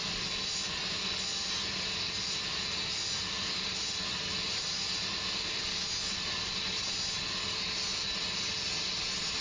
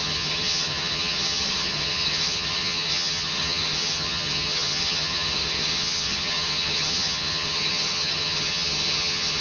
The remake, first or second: second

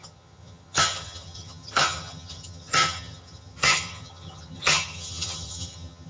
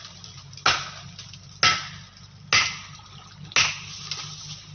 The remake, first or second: first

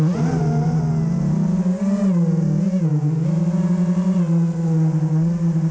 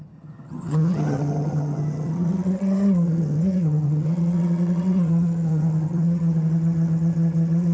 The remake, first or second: second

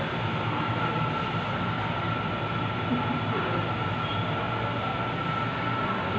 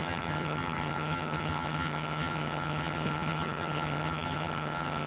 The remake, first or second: second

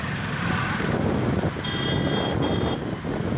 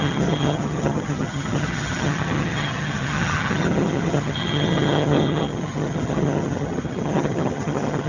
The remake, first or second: second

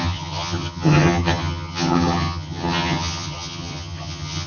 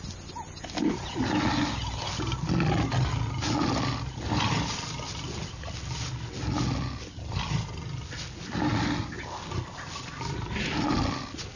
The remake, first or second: first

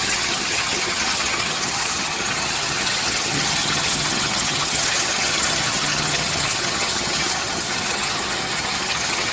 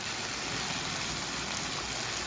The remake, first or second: first